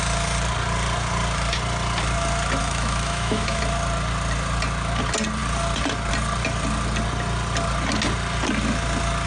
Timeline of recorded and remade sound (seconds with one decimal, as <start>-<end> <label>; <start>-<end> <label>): 0.0-2.6 recorded; 2.6-3.6 remade; 3.6-9.3 recorded